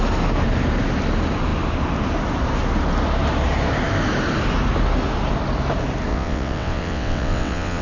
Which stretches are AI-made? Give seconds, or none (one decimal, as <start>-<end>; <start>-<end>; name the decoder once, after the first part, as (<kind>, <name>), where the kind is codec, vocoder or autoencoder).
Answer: 6.1-7.8 (vocoder, WaveNeXt)